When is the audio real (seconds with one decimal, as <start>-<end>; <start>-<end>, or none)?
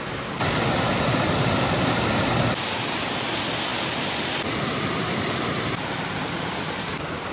0.0-7.3